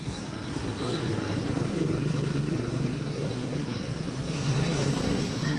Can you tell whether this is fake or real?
fake